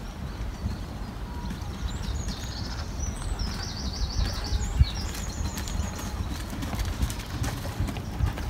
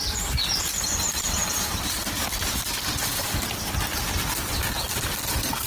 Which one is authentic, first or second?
first